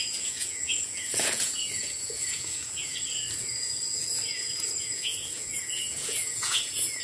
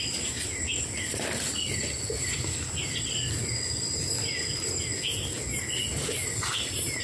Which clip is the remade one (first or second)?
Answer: first